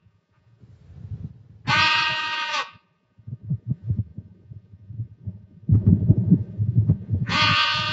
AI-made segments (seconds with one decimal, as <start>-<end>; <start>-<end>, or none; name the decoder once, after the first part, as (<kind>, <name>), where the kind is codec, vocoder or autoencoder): 0.0-0.6 (vocoder, Vocos); 1.7-7.9